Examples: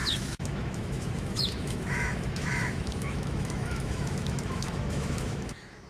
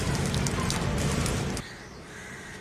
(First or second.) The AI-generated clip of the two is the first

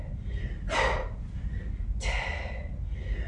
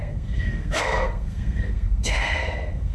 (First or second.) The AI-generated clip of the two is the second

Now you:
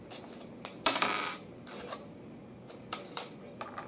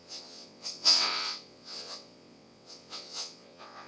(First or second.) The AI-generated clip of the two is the second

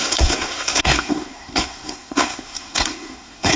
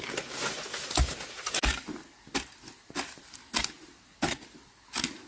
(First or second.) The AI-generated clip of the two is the first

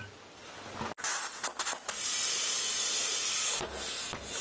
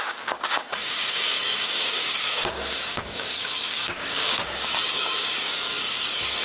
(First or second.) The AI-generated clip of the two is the second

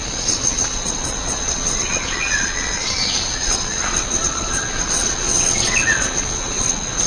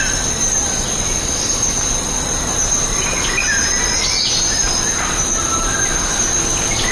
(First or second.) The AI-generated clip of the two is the first